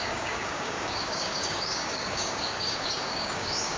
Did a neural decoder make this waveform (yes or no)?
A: yes